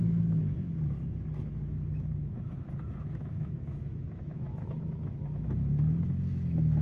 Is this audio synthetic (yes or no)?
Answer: yes